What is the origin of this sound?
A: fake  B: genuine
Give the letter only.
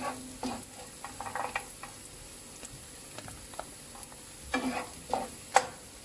B